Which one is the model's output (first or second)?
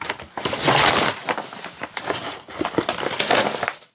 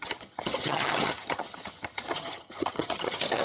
second